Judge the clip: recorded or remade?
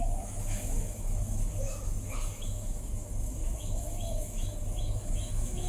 remade